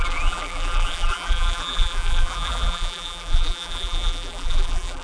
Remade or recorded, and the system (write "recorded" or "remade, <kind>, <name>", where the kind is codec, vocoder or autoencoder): remade, vocoder, BigVGAN v2